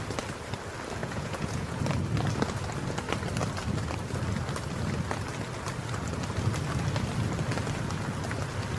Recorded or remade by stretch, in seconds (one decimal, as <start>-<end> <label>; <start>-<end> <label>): 0.0-1.0 recorded; 1.0-1.8 remade; 1.8-8.8 recorded